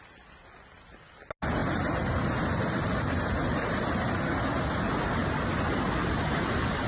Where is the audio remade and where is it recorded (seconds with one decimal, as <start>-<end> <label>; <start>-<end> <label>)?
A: 0.0-6.9 recorded